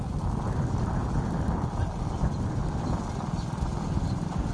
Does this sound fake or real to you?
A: real